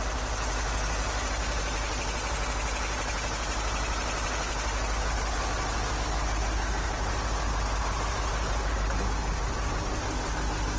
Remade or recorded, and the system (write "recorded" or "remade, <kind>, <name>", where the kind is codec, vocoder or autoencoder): recorded